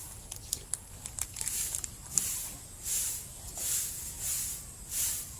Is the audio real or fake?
real